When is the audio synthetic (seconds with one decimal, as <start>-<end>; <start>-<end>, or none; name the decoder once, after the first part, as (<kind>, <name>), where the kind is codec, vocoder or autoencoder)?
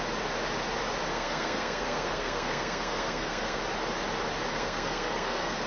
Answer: 1.1-3.6 (codec, SNAC); 4.5-5.7